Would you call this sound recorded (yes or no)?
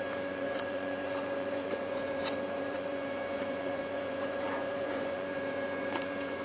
no